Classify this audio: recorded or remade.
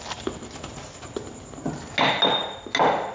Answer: recorded